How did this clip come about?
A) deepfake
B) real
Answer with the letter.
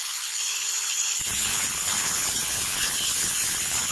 A